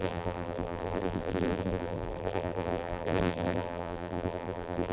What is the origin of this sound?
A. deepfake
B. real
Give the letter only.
A